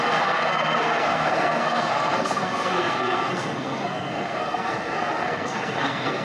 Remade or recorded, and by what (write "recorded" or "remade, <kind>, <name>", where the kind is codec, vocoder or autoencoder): remade, codec, SNAC